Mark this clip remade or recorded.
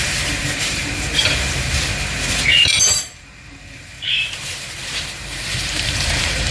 remade